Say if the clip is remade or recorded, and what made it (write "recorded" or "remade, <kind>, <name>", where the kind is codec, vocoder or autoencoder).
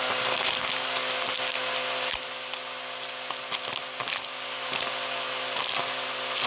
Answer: recorded